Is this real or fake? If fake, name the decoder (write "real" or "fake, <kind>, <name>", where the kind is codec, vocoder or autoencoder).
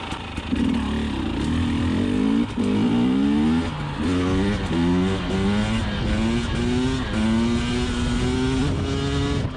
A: real